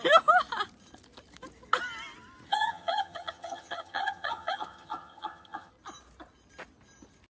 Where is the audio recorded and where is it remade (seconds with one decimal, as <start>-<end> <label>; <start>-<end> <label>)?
0.0-2.5 recorded; 2.5-5.7 remade; 5.7-7.3 recorded